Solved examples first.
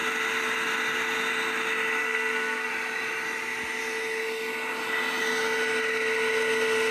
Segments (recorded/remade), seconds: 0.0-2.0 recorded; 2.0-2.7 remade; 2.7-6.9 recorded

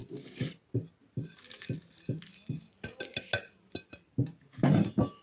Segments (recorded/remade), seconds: 0.0-5.2 recorded

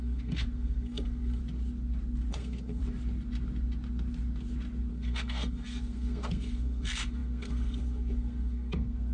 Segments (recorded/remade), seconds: 0.0-1.4 remade; 1.4-2.3 recorded; 2.3-2.8 remade; 2.8-4.9 recorded; 4.9-9.1 remade

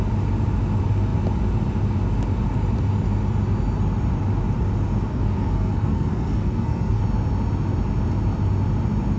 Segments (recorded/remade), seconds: 0.0-5.1 recorded; 5.1-7.0 remade; 7.0-9.2 recorded

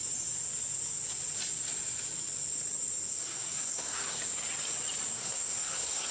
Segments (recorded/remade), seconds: 0.0-3.1 recorded; 3.1-4.2 remade; 4.2-5.1 recorded; 5.1-6.1 remade

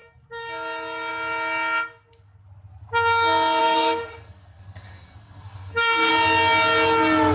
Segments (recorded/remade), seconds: 0.0-3.6 recorded; 3.6-6.1 remade; 6.1-7.3 recorded

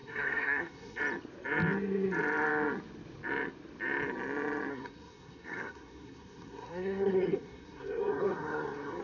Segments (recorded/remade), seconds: 0.0-1.0 remade; 1.0-4.7 recorded; 4.7-9.0 remade